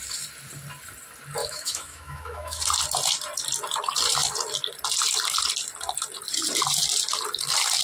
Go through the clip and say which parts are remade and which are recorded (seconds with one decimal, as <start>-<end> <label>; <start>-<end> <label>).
0.0-1.4 recorded; 1.4-2.6 remade; 2.6-7.8 recorded